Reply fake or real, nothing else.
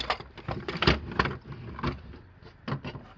real